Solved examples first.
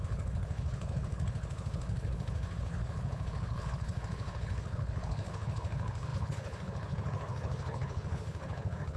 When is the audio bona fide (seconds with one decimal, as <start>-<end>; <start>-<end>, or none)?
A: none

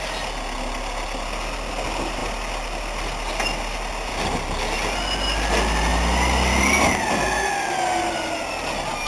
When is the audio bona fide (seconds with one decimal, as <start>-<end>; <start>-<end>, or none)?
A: 0.0-9.1

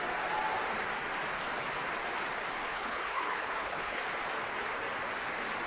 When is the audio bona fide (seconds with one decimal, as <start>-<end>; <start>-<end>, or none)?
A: 0.0-2.7; 4.0-5.7